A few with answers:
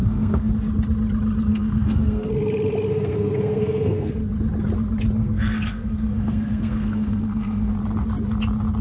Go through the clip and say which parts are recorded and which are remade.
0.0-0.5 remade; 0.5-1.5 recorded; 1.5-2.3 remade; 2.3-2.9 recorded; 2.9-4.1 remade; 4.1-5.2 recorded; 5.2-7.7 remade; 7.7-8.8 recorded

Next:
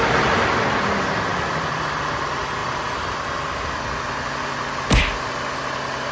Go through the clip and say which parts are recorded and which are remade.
0.0-6.1 recorded

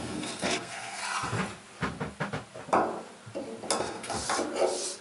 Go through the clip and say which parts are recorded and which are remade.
0.0-1.0 remade; 1.0-3.8 recorded; 3.8-4.2 remade; 4.2-5.0 recorded

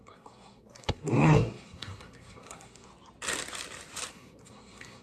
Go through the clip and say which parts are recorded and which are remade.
0.0-2.9 remade; 2.9-4.1 recorded; 4.1-5.0 remade

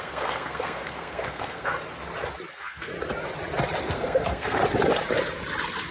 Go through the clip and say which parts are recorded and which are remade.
0.0-1.7 remade; 1.7-2.5 recorded; 2.5-2.9 remade; 2.9-3.8 recorded; 3.8-4.6 remade; 4.6-5.9 recorded

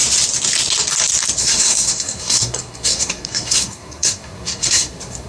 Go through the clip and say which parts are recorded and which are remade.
0.0-1.4 recorded; 1.4-5.3 remade

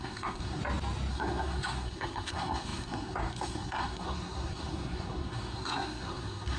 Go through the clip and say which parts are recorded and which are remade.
0.0-0.6 remade; 0.6-1.1 recorded; 1.1-6.6 remade